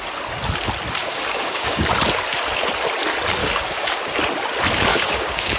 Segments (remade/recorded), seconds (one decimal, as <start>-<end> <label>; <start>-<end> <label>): 0.0-1.0 recorded; 1.0-1.8 remade; 1.8-3.4 recorded; 3.4-4.0 remade; 4.0-4.9 recorded; 4.9-5.6 remade